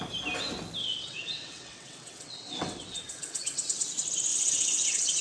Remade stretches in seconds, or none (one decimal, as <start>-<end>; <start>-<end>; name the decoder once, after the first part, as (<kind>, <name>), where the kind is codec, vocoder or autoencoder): 0.8-3.9 (vocoder, WaveNeXt); 4.3-5.2